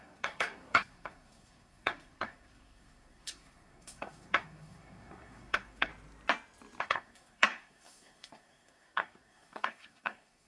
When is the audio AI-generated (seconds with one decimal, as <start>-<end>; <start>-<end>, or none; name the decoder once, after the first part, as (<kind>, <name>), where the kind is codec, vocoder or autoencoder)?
0.0-5.9 (codec, SNAC); 6.8-10.5